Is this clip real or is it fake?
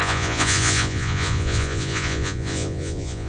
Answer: fake